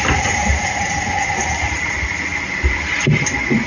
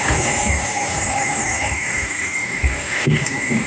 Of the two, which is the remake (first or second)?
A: second